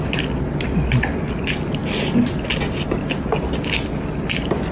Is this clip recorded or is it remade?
recorded